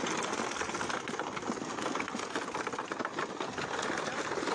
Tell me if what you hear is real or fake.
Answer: real